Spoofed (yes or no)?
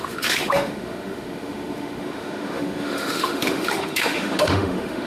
yes